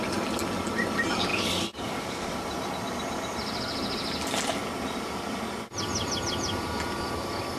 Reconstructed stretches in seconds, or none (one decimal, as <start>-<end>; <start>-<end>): 1.3-2.4